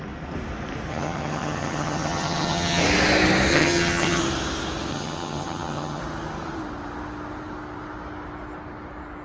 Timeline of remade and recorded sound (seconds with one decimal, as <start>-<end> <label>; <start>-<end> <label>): 0.0-0.9 recorded; 0.9-2.8 remade; 2.8-3.5 recorded; 3.5-4.2 remade; 4.2-4.9 recorded; 4.9-6.0 remade; 6.0-9.2 recorded